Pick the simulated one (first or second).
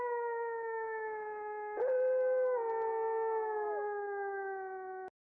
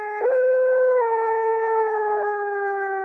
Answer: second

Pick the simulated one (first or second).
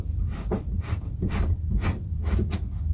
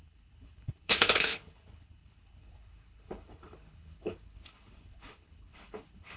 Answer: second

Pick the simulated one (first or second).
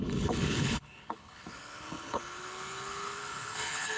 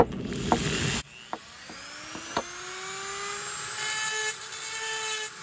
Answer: first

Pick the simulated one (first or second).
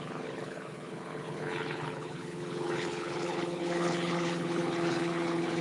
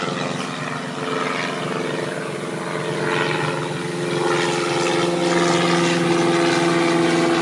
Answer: first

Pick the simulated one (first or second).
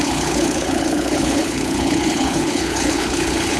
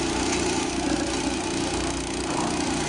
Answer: first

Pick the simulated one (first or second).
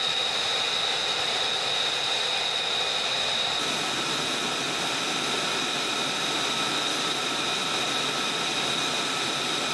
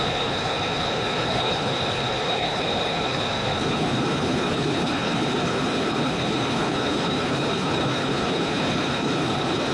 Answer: second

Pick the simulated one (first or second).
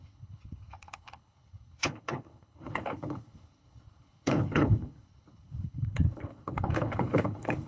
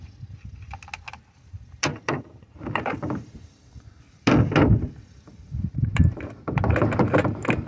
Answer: first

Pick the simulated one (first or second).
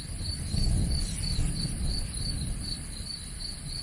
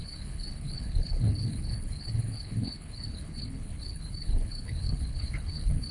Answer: second